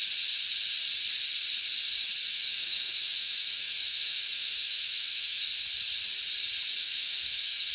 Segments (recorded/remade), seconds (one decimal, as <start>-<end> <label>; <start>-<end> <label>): 0.0-2.3 recorded; 2.3-5.5 remade; 5.5-6.8 recorded; 6.8-7.7 remade